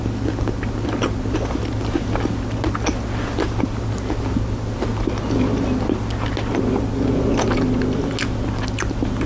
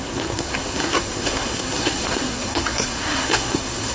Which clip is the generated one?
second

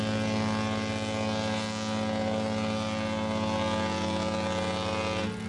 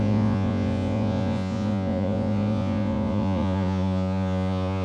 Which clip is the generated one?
second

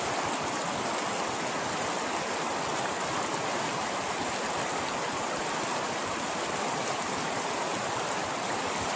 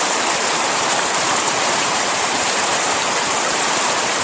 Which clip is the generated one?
second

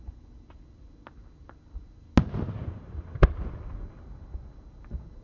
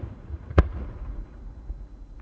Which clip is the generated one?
second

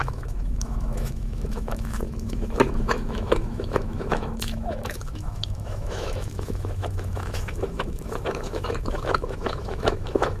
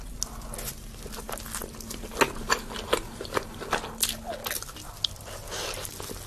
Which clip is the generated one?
first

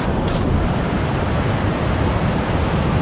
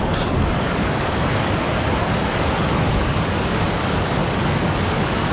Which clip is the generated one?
second